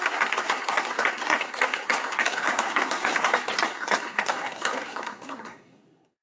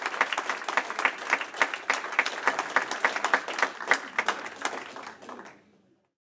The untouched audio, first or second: second